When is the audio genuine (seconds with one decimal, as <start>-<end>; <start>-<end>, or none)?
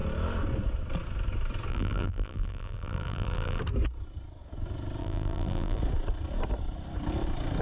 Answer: 0.0-1.7; 3.6-5.0; 5.8-7.6